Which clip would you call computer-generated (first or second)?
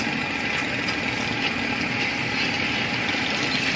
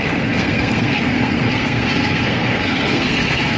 second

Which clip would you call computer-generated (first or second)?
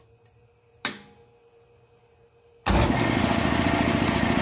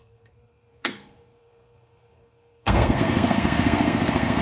second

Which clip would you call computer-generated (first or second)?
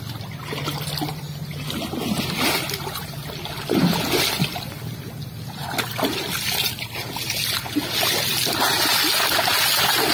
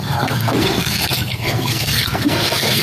second